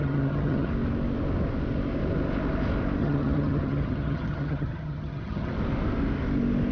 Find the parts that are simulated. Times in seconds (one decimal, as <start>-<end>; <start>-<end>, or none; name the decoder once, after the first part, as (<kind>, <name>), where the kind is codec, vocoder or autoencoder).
0.0-0.7 (vocoder, HiFi-GAN); 3.0-5.5